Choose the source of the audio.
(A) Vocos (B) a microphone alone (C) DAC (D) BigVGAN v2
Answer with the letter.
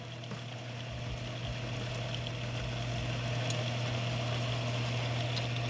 B